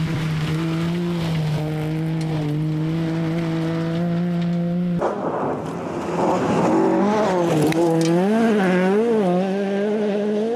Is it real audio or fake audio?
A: real